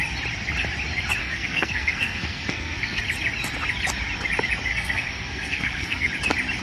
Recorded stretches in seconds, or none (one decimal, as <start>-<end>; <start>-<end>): 0.0-1.2; 3.0-4.7; 6.1-6.6